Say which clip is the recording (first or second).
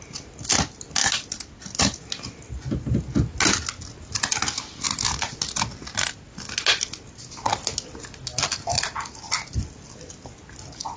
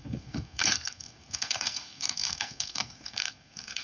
first